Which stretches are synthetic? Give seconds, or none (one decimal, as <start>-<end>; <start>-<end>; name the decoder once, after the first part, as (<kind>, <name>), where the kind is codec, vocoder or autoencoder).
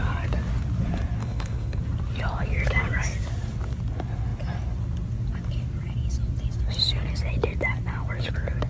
1.2-1.8 (codec, HILCodec)